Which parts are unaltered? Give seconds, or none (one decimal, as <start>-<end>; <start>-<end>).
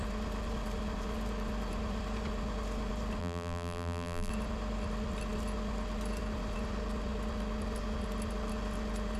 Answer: 0.0-3.2; 4.3-9.2